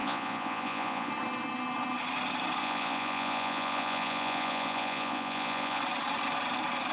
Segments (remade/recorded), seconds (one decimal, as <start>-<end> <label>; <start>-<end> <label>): 0.0-1.1 remade; 1.1-2.6 recorded; 2.6-5.8 remade; 5.8-6.9 recorded